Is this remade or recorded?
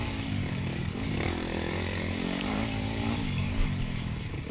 remade